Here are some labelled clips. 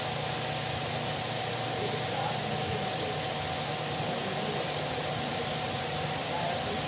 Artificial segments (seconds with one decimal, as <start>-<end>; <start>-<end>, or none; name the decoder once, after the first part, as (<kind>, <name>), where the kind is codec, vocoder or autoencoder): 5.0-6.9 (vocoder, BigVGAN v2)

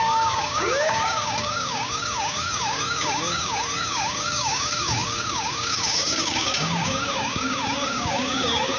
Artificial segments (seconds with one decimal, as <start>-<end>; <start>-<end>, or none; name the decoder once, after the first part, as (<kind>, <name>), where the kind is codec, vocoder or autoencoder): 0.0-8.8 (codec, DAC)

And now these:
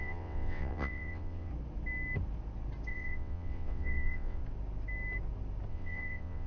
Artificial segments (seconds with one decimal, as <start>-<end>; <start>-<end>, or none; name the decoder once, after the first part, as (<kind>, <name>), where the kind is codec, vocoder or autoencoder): 0.0-1.5 (vocoder, WaveNeXt); 2.9-4.4; 5.7-6.5

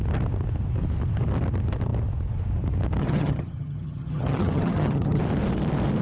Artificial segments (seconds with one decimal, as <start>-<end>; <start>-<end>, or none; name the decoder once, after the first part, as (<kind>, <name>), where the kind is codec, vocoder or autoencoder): 3.0-5.2 (vocoder, HiFi-GAN)